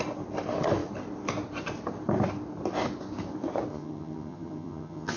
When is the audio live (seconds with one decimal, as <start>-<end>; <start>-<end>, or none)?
0.0-3.7